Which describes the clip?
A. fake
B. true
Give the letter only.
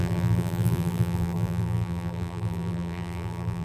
A